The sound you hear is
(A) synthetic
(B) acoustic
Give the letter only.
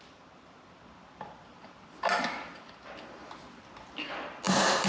B